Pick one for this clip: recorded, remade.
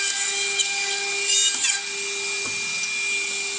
recorded